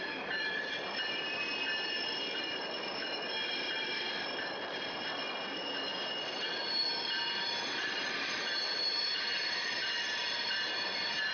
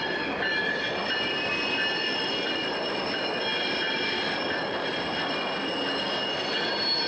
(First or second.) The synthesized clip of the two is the first